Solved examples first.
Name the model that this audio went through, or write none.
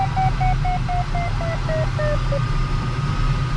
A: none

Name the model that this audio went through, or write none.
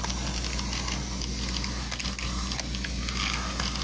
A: none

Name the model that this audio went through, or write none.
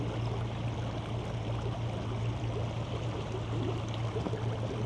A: none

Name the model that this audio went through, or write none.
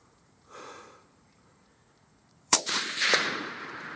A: vocoder, Vocos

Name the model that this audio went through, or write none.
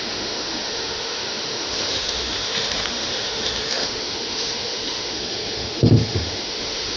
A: autoencoder, DAC-VAE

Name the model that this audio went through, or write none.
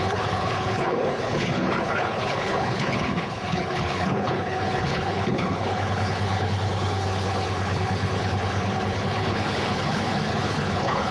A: codec, HILCodec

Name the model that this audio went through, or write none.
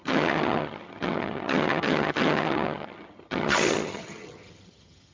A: vocoder, HiFi-GAN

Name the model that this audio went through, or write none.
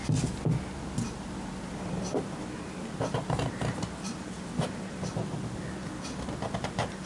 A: none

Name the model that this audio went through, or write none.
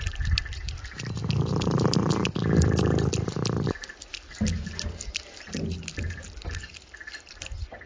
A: none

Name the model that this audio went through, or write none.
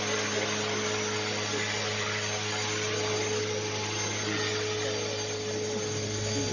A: none